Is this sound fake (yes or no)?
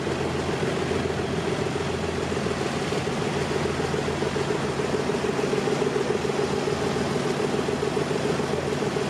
no